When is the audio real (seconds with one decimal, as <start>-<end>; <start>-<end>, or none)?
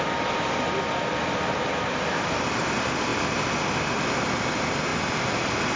none